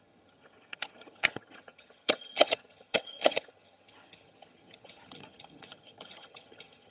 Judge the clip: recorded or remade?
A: remade